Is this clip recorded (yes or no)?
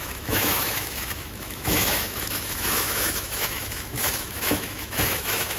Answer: no